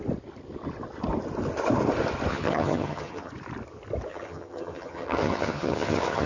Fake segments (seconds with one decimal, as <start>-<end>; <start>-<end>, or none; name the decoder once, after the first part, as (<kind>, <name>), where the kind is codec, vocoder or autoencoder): 2.3-3.3 (vocoder, HiFi-GAN); 4.1-6.3